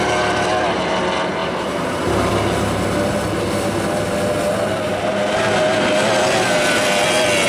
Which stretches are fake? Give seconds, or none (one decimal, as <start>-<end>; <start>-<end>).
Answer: 1.4-2.3